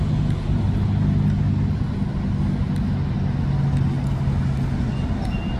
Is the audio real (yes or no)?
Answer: yes